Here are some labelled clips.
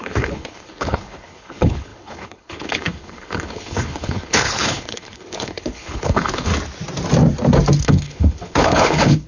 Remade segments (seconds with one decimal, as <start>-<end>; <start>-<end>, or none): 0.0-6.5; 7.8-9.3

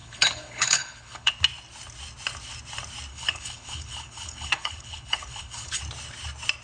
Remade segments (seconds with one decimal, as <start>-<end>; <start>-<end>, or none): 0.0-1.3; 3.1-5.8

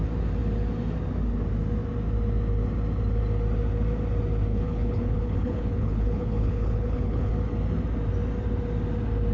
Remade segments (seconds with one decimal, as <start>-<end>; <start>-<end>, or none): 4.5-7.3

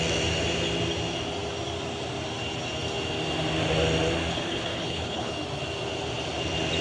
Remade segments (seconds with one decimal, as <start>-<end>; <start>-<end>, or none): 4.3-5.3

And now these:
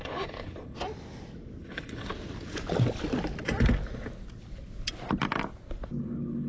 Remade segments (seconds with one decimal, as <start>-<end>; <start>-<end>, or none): 0.0-0.8; 1.6-2.1; 6.0-6.5

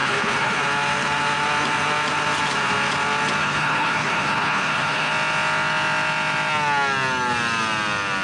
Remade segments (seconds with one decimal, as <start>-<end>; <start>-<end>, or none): 0.0-0.6; 3.4-5.1

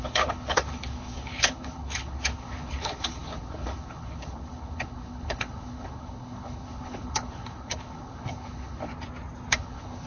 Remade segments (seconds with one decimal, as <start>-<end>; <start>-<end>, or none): 0.0-8.9; 9.5-10.1